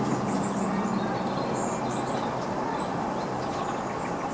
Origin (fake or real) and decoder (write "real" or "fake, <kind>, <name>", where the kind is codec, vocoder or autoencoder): real